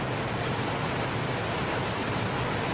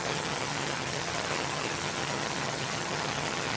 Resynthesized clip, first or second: second